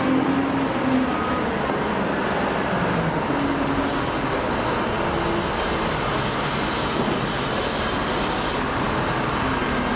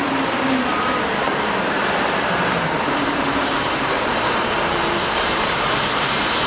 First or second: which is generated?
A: second